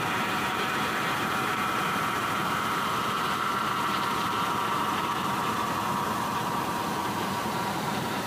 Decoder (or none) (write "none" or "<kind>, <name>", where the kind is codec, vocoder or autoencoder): vocoder, BigVGAN v2